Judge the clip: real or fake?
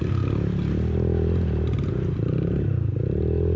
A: real